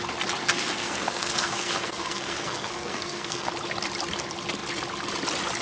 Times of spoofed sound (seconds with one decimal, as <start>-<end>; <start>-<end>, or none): 0.4-3.5